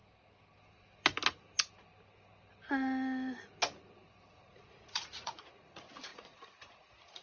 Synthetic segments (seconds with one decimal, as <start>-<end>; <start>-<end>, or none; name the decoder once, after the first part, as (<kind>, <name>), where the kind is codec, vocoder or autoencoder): 4.3-7.2 (vocoder, Vocos)